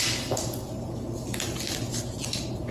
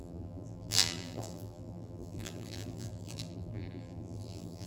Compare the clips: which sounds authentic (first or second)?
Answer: first